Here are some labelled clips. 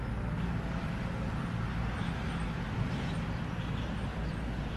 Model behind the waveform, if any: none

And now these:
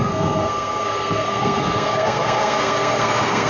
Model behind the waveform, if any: codec, SNAC